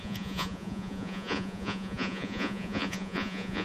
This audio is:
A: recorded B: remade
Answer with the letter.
B